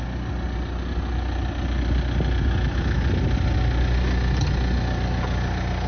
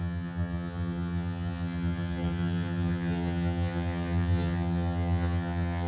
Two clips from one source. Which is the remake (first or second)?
second